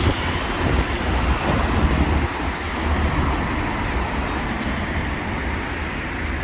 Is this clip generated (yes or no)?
no